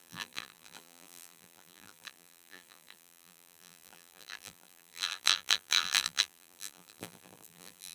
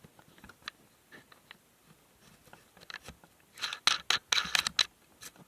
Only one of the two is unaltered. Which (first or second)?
second